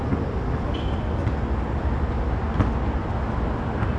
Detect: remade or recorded recorded